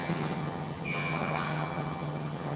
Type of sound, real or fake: fake